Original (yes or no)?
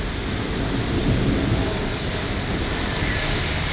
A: yes